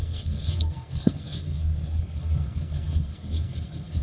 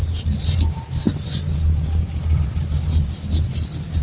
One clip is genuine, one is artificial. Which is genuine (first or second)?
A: second